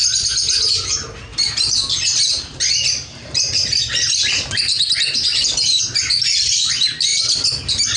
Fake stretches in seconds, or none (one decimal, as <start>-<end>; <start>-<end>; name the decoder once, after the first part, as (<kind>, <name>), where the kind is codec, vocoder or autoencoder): 1.3-5.8 (vocoder, BigVGAN v2)